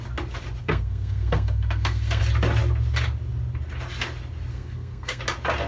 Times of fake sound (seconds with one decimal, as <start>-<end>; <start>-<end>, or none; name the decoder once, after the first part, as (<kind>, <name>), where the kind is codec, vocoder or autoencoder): 0.6-2.2 (codec, SNAC); 4.5-5.2